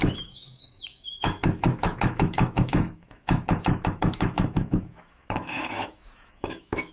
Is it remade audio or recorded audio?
remade